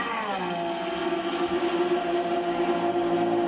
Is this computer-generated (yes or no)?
no